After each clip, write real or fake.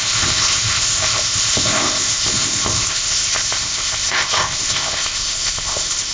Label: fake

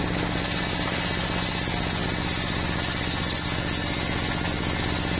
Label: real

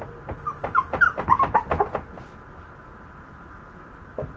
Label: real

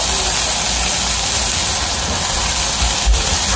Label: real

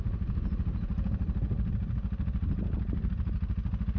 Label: real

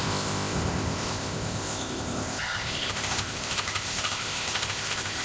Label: fake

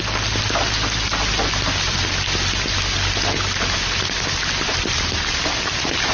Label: real